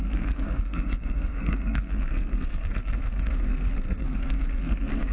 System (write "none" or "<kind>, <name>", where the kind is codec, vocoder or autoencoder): codec, SNAC